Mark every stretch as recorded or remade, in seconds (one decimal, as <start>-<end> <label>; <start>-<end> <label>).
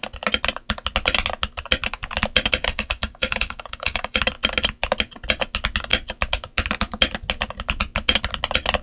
0.0-2.6 recorded; 2.6-4.2 remade; 4.2-8.8 recorded